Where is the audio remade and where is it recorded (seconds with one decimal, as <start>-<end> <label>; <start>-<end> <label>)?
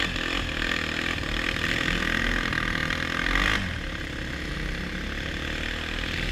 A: 0.0-6.3 recorded